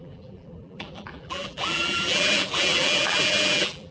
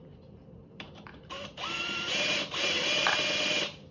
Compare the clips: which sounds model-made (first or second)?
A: first